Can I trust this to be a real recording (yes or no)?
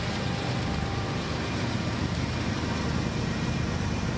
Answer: no